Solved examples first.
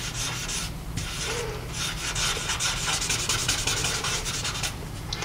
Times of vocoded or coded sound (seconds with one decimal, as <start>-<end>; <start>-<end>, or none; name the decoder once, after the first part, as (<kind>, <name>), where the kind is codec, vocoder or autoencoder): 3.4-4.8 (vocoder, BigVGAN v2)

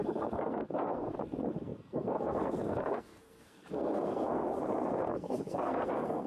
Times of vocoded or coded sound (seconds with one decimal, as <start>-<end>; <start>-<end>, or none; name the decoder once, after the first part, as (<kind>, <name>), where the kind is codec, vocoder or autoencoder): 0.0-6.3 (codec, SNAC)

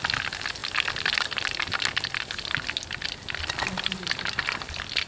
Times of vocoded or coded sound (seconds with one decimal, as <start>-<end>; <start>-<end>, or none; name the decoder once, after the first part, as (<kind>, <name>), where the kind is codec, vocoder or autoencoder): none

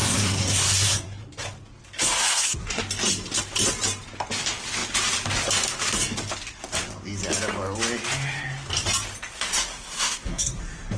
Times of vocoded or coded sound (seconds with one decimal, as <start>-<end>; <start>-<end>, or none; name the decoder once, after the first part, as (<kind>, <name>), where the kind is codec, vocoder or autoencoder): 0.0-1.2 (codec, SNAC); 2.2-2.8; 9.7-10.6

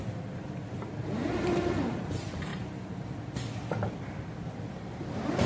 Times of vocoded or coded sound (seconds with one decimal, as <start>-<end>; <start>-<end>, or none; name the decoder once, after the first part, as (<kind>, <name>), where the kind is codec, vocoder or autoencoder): 0.0-2.5 (vocoder, BigVGAN v2); 3.1-5.5

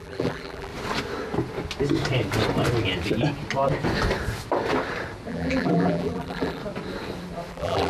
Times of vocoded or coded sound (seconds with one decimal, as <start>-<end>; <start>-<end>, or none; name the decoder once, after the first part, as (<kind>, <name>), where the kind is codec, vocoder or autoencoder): 0.0-0.7 (vocoder, BigVGAN v2); 5.3-6.6; 7.5-7.9

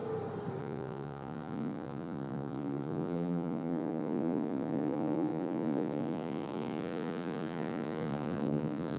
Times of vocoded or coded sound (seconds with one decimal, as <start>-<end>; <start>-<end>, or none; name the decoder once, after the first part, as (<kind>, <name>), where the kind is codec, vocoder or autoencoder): 0.6-9.0 (vocoder, Vocos)

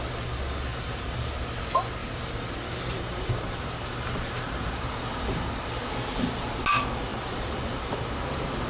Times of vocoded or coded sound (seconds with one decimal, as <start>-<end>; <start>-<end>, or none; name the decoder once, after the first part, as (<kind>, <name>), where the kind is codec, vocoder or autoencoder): 0.7-1.3 (vocoder, BigVGAN v2); 2.0-6.6; 7.1-8.2